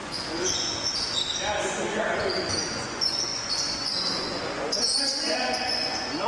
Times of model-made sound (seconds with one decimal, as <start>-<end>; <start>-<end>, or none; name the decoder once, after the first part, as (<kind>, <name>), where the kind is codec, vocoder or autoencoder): 0.0-1.1 (vocoder, Vocos); 1.6-6.3